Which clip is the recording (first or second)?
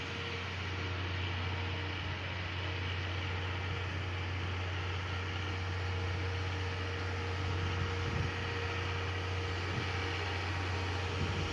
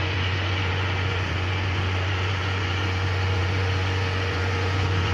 first